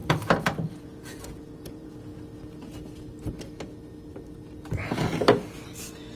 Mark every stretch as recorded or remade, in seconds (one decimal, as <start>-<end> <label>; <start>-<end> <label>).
0.0-0.8 recorded; 0.8-2.1 remade; 2.1-5.8 recorded; 5.8-6.2 remade